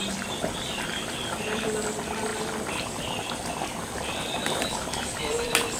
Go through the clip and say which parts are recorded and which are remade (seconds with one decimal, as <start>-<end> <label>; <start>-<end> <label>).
0.0-5.8 remade